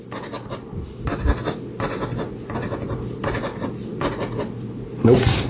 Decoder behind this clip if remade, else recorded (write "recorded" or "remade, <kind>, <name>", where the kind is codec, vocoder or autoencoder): recorded